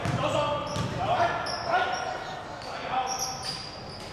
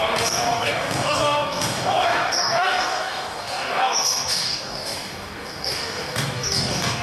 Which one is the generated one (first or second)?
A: second